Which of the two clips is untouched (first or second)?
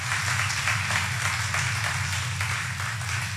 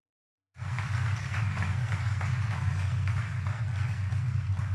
first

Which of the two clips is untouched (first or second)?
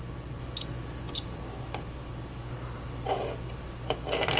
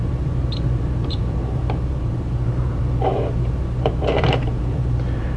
first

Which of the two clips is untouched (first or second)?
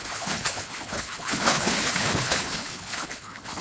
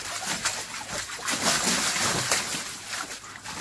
second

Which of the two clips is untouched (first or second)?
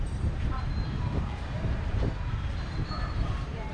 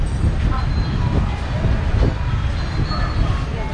second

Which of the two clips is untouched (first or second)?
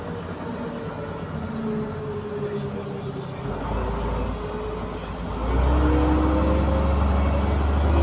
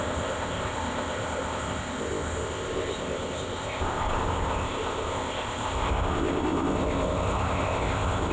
first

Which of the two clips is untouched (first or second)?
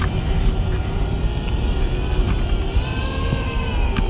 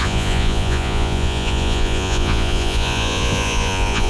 first